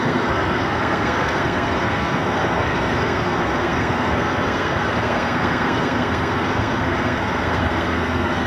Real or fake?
fake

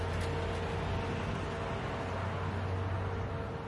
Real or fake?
real